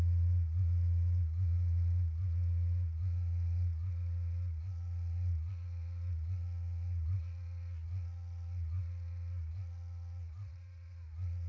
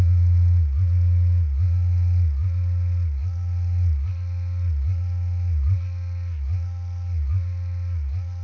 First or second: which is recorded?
second